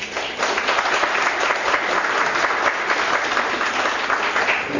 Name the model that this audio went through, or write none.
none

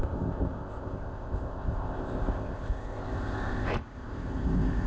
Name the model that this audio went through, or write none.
codec, ZipCodec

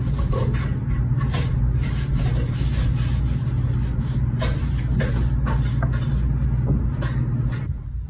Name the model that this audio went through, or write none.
none